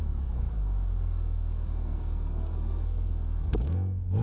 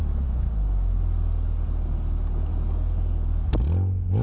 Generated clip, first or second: first